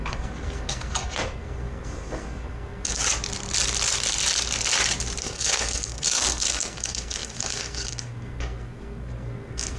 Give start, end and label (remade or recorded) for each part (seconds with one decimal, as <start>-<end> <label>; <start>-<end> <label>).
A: 0.0-3.0 remade; 3.0-5.2 recorded; 5.2-9.8 remade

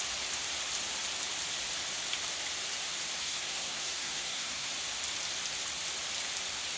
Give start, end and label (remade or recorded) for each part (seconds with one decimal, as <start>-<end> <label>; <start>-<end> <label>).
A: 0.0-3.2 recorded; 3.2-4.7 remade; 4.7-6.8 recorded

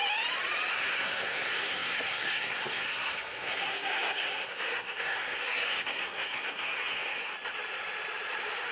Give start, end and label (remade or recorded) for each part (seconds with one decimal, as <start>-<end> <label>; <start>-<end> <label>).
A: 0.0-0.7 recorded; 0.7-7.3 remade; 7.3-8.7 recorded

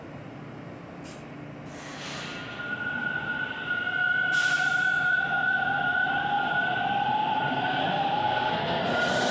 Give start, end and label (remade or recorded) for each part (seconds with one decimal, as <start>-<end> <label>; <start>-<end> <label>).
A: 0.0-7.8 recorded; 7.8-8.8 remade; 8.8-9.3 recorded